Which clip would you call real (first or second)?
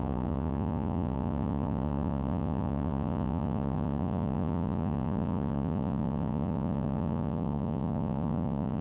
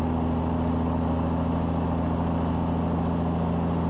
second